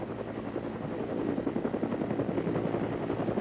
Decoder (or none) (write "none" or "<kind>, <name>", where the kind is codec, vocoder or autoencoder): none